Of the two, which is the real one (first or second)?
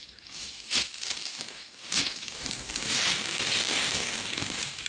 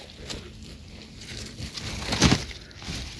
second